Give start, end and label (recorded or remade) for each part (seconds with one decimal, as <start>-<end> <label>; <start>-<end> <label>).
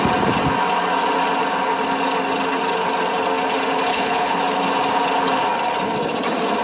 0.0-3.9 recorded; 3.9-4.4 remade; 4.4-6.6 recorded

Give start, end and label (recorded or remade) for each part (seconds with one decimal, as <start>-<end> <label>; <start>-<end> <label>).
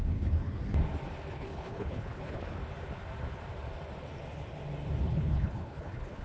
0.0-0.6 remade; 0.6-1.3 recorded; 1.3-2.6 remade; 2.6-5.0 recorded; 5.0-6.2 remade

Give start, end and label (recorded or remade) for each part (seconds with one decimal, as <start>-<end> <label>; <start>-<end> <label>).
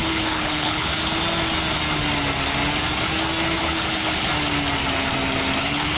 0.0-0.9 remade; 0.9-3.6 recorded; 3.6-4.3 remade; 4.3-5.6 recorded; 5.6-6.0 remade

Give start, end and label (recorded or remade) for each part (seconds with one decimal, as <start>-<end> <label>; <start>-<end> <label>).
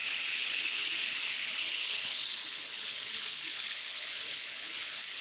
0.0-5.2 remade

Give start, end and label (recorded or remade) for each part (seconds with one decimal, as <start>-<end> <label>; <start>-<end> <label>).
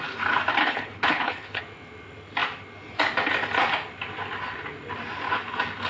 0.0-0.6 recorded; 0.6-1.6 remade; 1.6-5.9 recorded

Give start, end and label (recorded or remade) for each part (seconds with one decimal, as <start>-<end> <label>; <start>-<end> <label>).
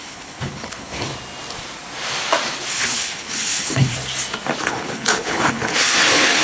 0.0-1.1 remade; 1.1-2.7 recorded; 2.7-3.9 remade; 3.9-4.6 recorded; 4.6-6.4 remade